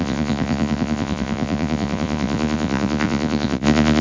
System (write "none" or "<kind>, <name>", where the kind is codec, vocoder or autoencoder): vocoder, Vocos